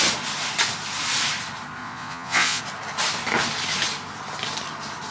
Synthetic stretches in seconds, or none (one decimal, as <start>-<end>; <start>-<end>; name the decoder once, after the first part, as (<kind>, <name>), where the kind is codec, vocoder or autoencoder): 1.8-2.6 (vocoder, Vocos)